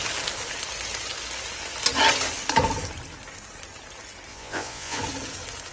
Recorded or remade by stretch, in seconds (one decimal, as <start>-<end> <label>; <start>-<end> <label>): 0.0-4.3 recorded; 4.3-5.0 remade; 5.0-5.7 recorded